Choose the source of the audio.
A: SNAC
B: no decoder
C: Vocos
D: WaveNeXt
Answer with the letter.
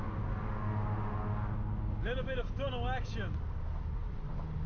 B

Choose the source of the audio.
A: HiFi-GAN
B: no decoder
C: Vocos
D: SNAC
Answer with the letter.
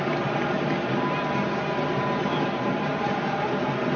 B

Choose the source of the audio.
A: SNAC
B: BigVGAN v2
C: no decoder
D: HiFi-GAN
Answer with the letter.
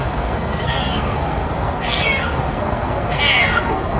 A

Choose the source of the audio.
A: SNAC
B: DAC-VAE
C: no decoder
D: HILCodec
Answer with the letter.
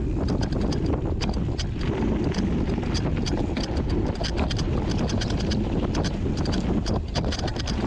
C